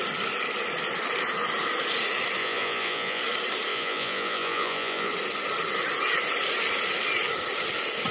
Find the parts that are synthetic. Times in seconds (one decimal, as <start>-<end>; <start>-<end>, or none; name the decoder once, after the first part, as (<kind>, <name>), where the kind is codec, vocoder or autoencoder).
2.4-3.2 (vocoder, Vocos); 3.7-5.1

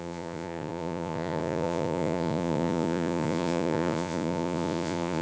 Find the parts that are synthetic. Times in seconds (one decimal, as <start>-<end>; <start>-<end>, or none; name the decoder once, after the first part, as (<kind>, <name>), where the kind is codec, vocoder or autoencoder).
0.0-5.2 (vocoder, Vocos)

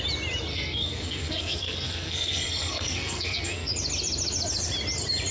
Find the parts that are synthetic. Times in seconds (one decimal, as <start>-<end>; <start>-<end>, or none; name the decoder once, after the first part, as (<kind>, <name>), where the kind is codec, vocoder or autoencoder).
0.5-3.7 (codec, SNAC)

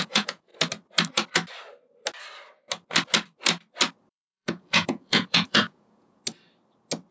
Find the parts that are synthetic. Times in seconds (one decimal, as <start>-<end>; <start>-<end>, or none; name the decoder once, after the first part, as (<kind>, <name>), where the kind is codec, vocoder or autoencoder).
0.0-0.5 (vocoder, Vocos); 4.1-6.2

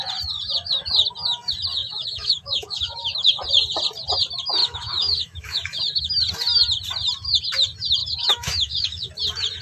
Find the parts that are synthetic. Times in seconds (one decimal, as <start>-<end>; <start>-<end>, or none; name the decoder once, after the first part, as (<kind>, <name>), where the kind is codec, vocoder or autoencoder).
1.8-3.3 (autoencoder, DAC-VAE); 4.6-6.1; 8.0-9.1